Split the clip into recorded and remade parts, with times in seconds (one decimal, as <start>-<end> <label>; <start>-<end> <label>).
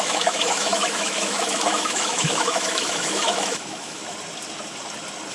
0.0-4.0 remade; 4.0-5.3 recorded